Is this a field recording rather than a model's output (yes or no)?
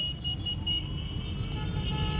yes